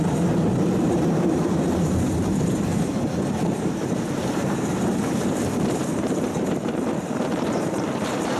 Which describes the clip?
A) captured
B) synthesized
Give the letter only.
B